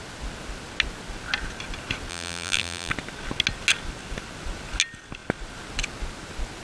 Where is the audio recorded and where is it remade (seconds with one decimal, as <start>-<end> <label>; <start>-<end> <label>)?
0.0-2.1 recorded; 2.1-2.9 remade; 2.9-6.6 recorded